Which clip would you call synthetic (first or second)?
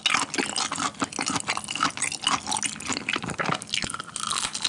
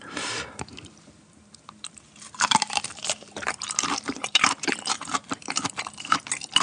second